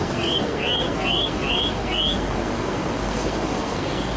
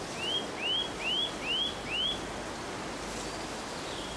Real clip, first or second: second